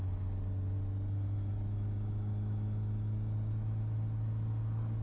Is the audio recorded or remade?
recorded